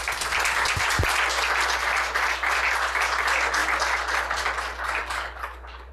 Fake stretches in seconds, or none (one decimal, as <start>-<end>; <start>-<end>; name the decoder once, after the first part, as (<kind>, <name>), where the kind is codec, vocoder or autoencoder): 5.0-5.9 (codec, DAC)